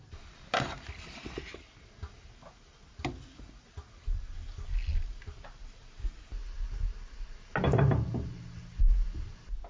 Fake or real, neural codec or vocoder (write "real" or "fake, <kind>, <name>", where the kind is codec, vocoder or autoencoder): real